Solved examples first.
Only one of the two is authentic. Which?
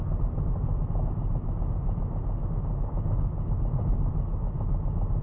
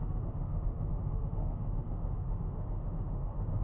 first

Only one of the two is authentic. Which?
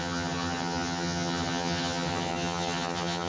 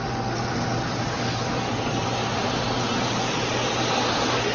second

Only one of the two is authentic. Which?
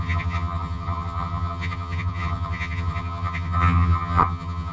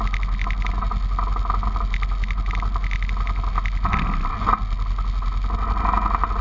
second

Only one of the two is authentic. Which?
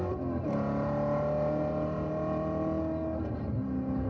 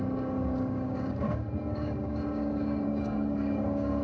first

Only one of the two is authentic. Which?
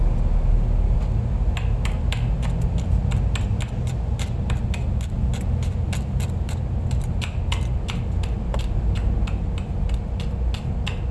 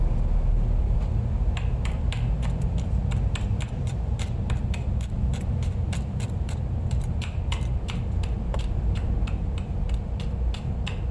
first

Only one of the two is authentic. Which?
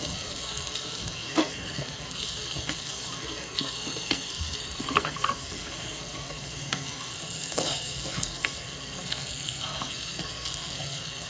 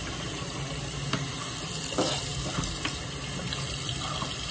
second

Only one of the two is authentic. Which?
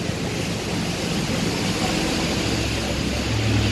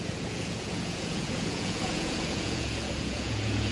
first